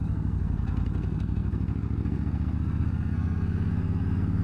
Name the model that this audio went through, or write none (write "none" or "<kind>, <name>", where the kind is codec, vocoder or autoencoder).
codec, SNAC